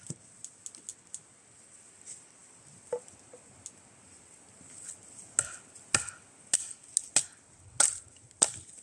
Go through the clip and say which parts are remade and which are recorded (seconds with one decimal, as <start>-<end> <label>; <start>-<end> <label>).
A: 0.0-8.8 recorded